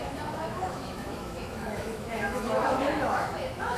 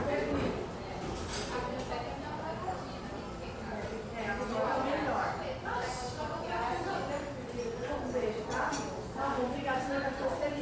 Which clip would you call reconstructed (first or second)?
first